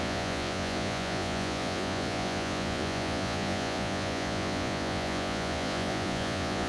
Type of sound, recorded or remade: remade